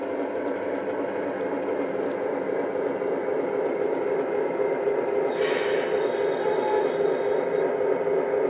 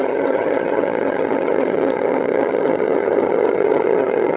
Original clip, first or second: first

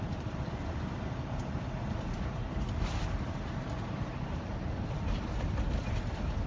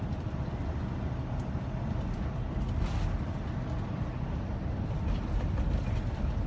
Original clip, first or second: second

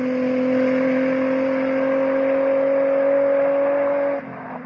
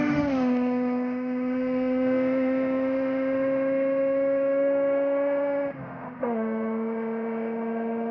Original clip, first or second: first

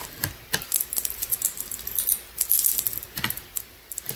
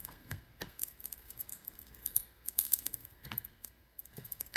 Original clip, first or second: first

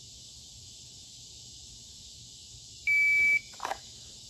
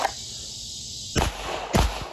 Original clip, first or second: second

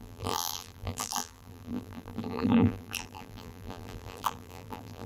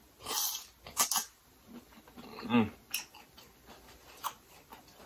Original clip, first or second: second